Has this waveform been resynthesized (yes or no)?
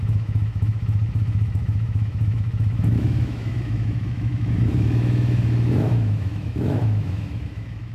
yes